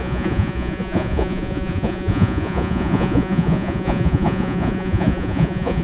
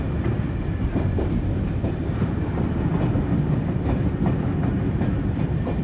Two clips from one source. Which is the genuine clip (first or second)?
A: second